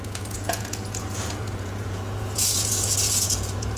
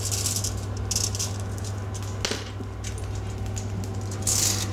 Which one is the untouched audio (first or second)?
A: second